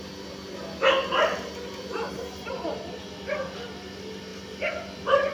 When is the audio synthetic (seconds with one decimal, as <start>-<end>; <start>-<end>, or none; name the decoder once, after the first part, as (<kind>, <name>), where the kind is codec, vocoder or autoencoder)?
none